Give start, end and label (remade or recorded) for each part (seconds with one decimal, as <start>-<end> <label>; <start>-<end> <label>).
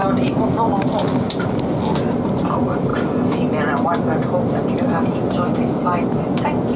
0.0-6.8 recorded